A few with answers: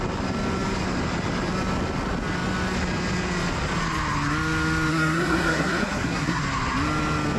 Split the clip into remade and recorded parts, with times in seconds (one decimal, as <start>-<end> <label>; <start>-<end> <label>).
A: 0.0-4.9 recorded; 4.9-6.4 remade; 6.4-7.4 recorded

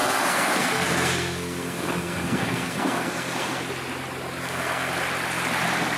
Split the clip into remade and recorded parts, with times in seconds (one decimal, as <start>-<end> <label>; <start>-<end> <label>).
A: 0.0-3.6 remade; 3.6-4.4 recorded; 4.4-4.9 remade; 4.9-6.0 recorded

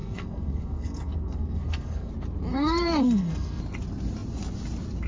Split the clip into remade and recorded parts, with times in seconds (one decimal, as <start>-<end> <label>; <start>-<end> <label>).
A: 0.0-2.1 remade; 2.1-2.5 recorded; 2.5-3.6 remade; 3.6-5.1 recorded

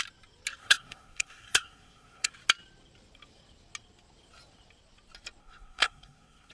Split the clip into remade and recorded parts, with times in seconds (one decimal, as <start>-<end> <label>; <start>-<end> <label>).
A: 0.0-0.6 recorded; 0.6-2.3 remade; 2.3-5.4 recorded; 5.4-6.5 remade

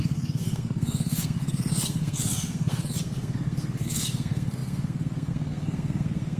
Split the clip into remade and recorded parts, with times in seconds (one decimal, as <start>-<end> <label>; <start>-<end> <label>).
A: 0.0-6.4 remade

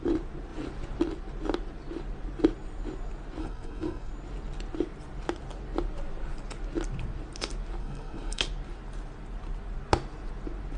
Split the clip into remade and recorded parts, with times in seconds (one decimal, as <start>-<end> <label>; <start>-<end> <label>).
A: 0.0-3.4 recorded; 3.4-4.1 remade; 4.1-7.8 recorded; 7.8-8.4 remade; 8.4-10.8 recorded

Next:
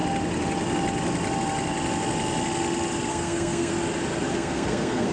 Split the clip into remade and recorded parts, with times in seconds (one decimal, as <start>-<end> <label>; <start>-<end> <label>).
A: 0.0-3.1 recorded; 3.1-3.7 remade; 3.7-4.3 recorded; 4.3-5.1 remade

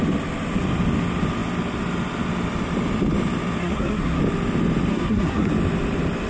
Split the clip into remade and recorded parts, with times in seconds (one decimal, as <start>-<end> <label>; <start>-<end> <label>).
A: 0.0-3.6 recorded; 3.6-4.2 remade; 4.2-4.9 recorded; 4.9-5.5 remade; 5.5-6.3 recorded